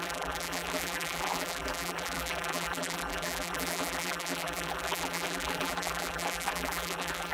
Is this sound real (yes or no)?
no